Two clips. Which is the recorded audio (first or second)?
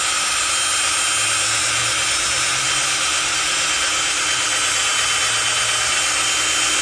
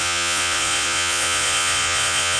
first